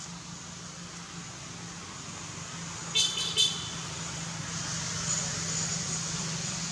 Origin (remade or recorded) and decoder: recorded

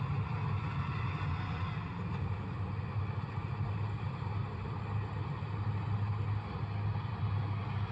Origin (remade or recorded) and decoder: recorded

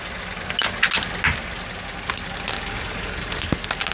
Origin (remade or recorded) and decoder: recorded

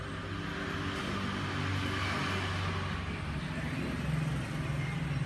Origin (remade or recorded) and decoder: recorded